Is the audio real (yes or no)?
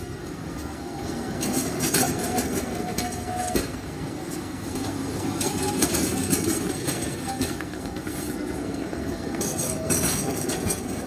no